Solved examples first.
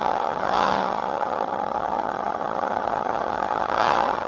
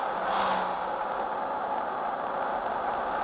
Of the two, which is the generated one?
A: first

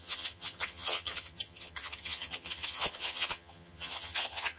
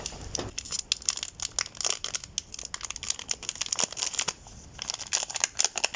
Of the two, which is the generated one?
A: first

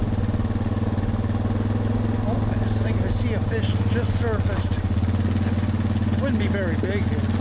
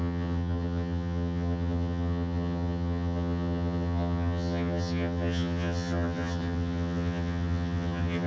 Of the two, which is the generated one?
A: second